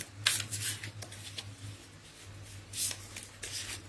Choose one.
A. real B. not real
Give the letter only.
A